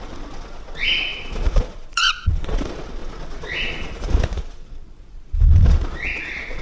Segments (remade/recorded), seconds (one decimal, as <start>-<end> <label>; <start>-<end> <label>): 0.0-6.6 remade